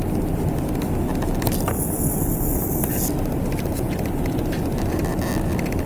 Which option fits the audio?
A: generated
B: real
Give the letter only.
B